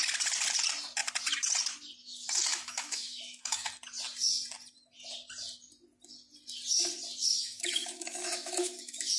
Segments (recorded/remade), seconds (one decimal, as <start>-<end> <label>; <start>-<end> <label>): 0.0-2.0 recorded; 2.0-3.7 remade; 3.7-7.3 recorded; 7.3-9.2 remade